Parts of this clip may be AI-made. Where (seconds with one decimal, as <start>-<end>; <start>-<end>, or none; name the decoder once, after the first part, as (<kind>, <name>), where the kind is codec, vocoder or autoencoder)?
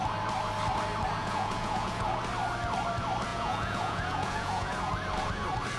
1.2-2.2 (vocoder, Vocos); 3.3-4.9